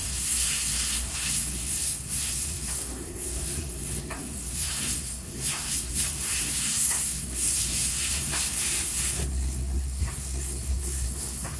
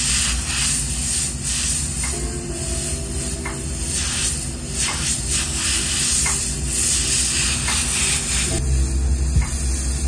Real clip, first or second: second